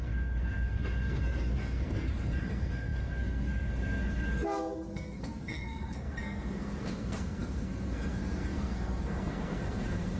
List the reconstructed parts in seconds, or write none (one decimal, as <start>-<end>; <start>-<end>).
0.0-10.2